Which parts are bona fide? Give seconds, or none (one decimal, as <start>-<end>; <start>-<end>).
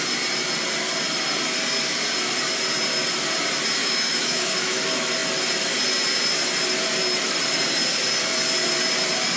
0.0-3.8; 4.8-9.4